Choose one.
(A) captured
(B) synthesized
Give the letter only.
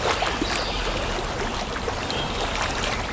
A